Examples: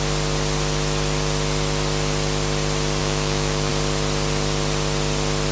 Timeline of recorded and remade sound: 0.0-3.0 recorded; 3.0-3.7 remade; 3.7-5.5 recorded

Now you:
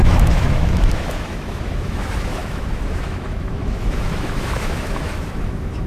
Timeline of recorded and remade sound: 0.0-5.9 remade

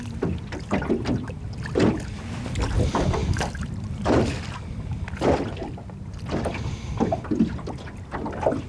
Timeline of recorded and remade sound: 0.0-8.7 recorded

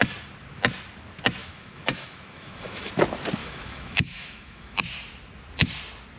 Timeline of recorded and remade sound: 0.0-1.4 recorded; 1.4-2.9 remade; 2.9-3.4 recorded; 3.4-4.8 remade; 4.8-6.2 recorded